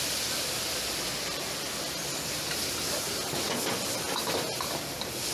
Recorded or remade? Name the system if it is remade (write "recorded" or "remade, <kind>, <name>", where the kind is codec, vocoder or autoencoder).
recorded